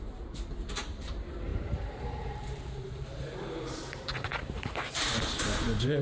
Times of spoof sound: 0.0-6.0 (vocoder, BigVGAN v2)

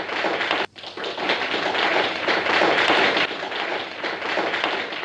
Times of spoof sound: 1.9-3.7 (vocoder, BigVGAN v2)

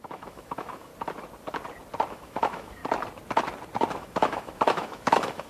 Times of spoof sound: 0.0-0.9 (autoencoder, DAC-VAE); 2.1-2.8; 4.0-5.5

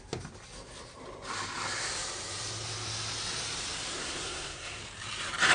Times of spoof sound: 4.0-4.8 (codec, SNAC)

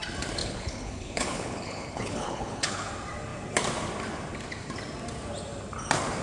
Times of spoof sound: 0.4-2.9 (codec, HILCodec)